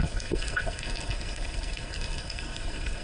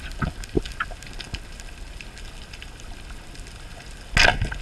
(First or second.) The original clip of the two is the second